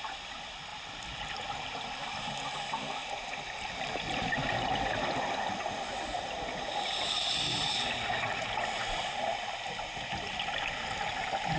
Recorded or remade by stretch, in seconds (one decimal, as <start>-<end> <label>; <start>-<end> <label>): 0.0-0.7 recorded; 0.7-5.8 remade; 5.8-8.8 recorded; 8.8-10.1 remade; 10.1-11.6 recorded